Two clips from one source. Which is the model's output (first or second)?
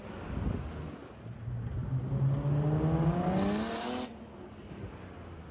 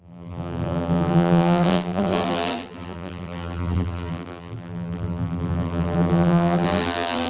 second